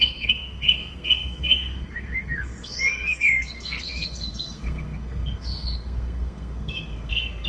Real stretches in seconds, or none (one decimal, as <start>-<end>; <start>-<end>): none